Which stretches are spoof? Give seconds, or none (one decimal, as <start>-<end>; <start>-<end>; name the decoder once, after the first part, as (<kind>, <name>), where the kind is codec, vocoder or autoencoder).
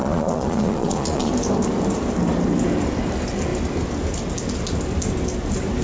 0.0-1.3 (vocoder, Vocos)